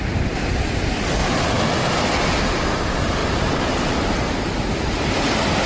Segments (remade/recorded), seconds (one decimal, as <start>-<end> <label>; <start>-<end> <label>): 0.0-1.2 recorded; 1.2-1.9 remade; 1.9-3.2 recorded; 3.2-4.4 remade; 4.4-5.7 recorded